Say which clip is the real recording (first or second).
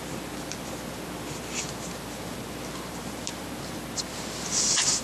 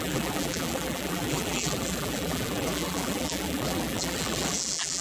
first